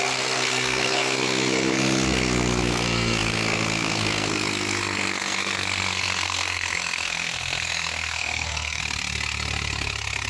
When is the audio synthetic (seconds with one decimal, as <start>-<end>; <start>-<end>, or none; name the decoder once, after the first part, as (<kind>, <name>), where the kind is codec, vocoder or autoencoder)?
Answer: 0.0-8.8 (codec, SNAC)